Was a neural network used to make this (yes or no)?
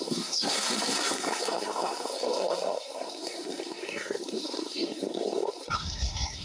yes